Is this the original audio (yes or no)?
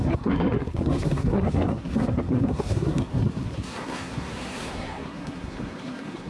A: no